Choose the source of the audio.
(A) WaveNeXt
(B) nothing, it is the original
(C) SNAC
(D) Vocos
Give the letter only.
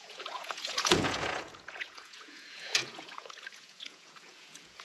D